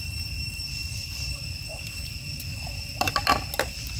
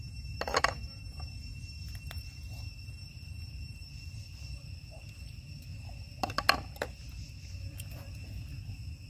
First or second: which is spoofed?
first